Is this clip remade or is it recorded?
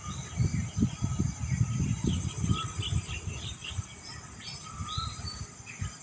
recorded